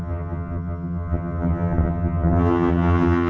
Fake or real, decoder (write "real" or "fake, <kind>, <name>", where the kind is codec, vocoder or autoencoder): fake, vocoder, HiFi-GAN